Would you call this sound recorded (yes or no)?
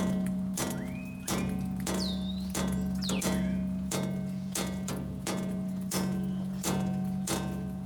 no